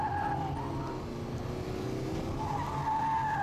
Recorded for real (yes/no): yes